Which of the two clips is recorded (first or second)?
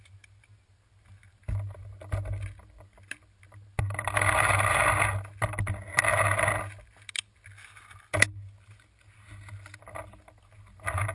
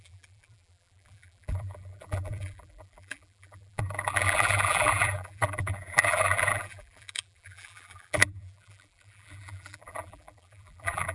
first